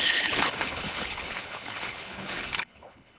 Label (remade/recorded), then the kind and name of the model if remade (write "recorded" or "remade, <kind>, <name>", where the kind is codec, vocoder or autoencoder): remade, codec, HILCodec